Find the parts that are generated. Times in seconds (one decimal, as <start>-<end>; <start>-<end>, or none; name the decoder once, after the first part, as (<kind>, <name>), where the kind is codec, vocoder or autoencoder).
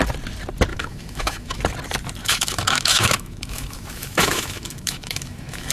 0.7-1.6 (autoencoder, DAC-VAE); 2.2-5.7